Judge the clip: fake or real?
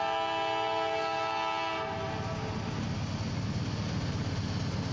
real